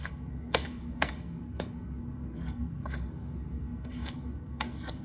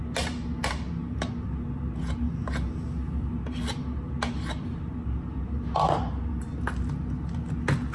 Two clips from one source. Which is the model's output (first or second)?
first